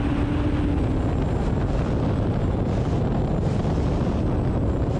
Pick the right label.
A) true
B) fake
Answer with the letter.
A